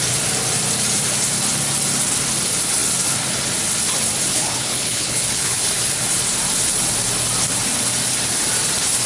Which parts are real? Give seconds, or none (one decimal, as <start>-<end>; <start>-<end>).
0.0-4.3; 5.7-9.1